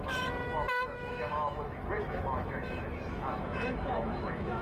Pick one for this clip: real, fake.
fake